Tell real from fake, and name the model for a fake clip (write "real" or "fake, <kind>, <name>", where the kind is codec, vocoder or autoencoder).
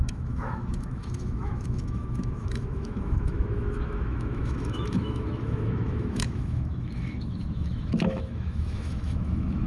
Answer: fake, autoencoder, DAC-VAE